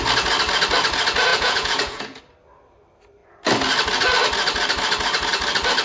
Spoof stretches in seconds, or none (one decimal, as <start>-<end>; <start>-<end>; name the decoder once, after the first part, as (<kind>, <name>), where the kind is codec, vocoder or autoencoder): 1.3-2.2 (vocoder, Vocos)

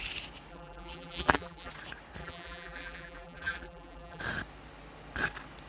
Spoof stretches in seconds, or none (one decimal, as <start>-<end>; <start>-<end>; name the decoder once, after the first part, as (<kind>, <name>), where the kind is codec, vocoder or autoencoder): 0.5-1.7 (vocoder, BigVGAN v2); 2.2-4.2

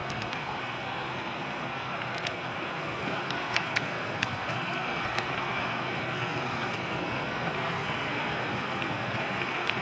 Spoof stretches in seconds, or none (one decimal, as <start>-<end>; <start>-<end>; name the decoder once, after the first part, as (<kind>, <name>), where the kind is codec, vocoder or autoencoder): 0.0-9.8 (codec, SNAC)

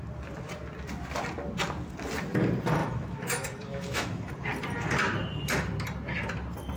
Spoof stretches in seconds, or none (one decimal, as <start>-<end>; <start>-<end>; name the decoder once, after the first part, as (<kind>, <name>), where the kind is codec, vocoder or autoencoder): 2.8-4.3 (autoencoder, DAC-VAE)

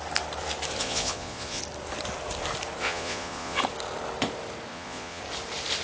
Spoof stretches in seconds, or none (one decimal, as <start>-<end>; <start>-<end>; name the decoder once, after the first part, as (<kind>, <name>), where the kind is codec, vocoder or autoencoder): 0.8-1.6 (vocoder, Vocos); 2.8-3.6; 4.7-5.2

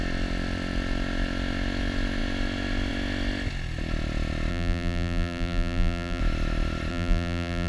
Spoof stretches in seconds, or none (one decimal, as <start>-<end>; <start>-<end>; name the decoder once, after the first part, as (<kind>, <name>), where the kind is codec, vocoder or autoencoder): 4.5-6.2 (vocoder, BigVGAN v2); 6.9-7.7